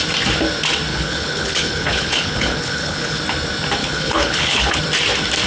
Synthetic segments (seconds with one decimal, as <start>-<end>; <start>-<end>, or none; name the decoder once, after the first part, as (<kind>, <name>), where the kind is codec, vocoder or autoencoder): 0.9-3.2 (codec, HILCodec); 3.8-4.8